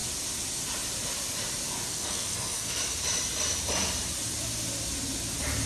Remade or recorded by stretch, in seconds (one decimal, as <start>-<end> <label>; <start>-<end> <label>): 0.0-1.9 recorded; 1.9-2.8 remade; 2.8-5.7 recorded